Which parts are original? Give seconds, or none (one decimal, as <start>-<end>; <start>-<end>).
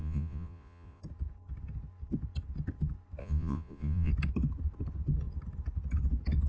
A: 1.0-3.2; 4.1-6.5